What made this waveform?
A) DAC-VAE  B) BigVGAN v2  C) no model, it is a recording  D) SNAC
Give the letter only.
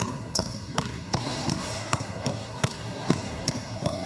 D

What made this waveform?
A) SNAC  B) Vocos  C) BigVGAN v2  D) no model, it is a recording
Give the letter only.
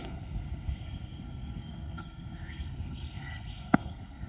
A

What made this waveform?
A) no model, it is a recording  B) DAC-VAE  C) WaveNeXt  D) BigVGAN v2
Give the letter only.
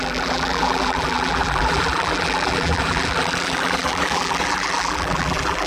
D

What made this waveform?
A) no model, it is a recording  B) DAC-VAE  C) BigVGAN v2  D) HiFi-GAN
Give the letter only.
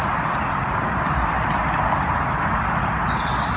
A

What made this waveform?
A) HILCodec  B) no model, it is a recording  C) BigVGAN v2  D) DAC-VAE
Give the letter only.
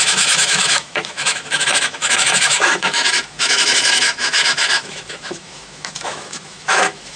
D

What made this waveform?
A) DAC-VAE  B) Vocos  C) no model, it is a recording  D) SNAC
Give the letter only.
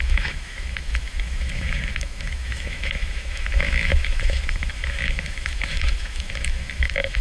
A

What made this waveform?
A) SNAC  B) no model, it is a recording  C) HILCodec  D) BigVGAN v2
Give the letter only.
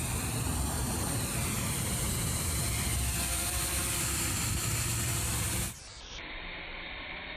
D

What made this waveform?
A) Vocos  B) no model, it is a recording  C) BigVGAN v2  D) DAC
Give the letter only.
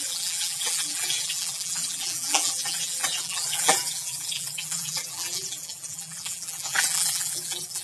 C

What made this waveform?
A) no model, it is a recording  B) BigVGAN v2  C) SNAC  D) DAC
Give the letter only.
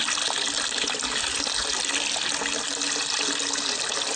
A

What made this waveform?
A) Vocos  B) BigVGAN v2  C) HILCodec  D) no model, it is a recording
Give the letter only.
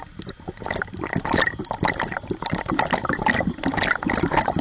D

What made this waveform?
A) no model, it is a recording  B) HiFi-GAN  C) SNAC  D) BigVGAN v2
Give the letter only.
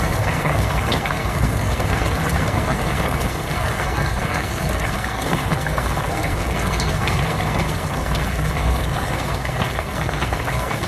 C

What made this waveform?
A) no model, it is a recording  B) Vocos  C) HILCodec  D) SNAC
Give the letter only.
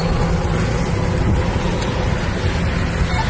A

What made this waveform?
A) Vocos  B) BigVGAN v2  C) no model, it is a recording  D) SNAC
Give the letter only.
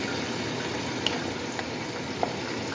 C